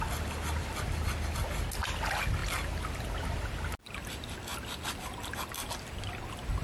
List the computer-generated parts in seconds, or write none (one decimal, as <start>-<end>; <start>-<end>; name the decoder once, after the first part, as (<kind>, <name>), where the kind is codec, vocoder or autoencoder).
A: none